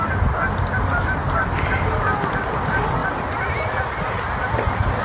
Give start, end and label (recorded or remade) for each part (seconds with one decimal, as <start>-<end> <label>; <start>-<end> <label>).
0.0-5.0 recorded